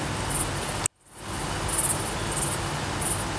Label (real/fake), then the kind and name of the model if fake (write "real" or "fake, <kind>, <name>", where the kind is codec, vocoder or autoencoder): real